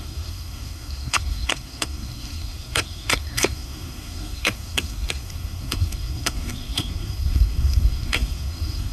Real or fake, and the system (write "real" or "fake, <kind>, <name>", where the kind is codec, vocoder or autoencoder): fake, codec, SNAC